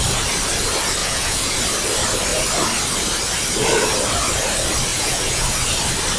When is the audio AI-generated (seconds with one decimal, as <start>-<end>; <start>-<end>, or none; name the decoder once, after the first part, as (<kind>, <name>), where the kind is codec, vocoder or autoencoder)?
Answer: 1.0-1.6 (vocoder, Vocos); 4.9-5.4

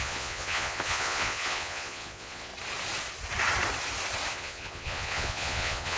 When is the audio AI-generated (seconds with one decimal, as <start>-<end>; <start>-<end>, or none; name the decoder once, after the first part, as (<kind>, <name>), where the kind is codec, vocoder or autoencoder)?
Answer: 0.0-2.5 (vocoder, Vocos); 4.3-6.0